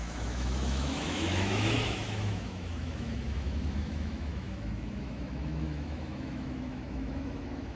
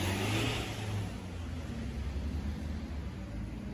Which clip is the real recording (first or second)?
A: second